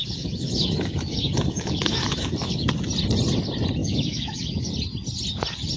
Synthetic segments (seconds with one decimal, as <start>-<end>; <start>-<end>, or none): 0.0-2.7; 3.8-4.7